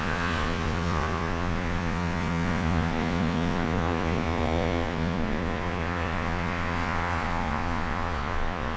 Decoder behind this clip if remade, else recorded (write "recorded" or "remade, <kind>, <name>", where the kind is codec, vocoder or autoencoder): remade, vocoder, Vocos